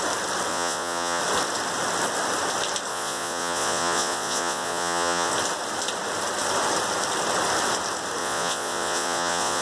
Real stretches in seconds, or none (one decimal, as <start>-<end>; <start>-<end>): 0.0-0.5; 1.2-2.9; 5.3-8.2